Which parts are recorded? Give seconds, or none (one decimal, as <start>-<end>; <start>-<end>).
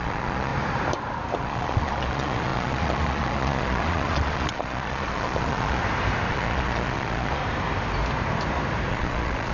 0.5-1.4; 5.8-6.3; 7.4-8.9